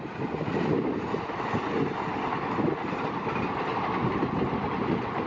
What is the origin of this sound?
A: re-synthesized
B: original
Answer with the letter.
B